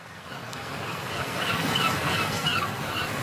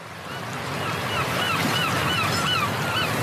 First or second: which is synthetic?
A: first